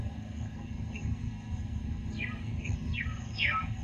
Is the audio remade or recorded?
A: remade